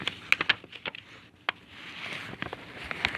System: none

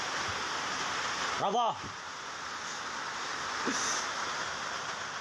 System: none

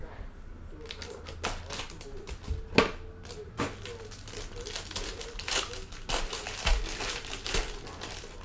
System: none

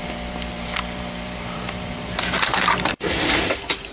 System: vocoder, BigVGAN v2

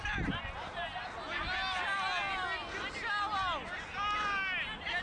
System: none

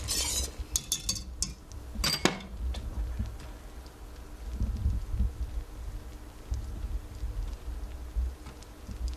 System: none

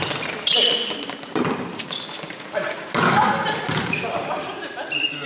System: none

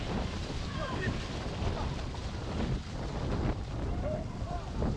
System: vocoder, BigVGAN v2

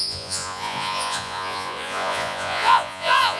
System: vocoder, Vocos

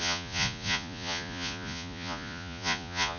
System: vocoder, Vocos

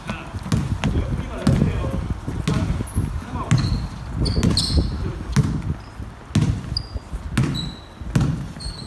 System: none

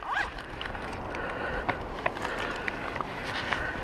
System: none